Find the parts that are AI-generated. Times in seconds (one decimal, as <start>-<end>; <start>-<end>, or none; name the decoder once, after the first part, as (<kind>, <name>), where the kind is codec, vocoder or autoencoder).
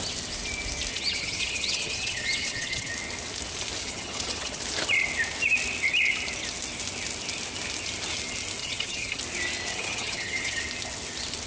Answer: 0.9-2.9 (vocoder, HiFi-GAN); 3.8-4.6; 8.6-9.2; 9.7-10.6